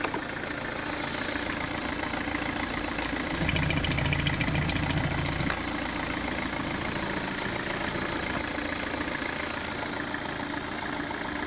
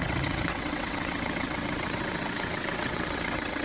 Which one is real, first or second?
first